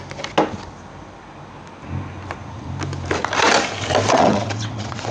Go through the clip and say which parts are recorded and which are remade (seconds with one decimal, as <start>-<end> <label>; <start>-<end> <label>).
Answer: 0.0-4.1 recorded; 4.1-5.1 remade